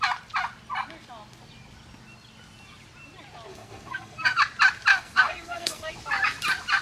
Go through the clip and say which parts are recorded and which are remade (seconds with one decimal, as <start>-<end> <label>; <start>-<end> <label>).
0.0-3.5 recorded; 3.5-4.4 remade; 4.4-4.9 recorded; 4.9-5.9 remade; 5.9-6.8 recorded